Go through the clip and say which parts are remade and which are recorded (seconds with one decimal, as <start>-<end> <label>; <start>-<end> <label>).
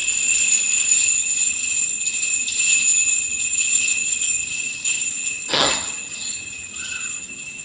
0.0-0.9 recorded; 0.9-7.6 remade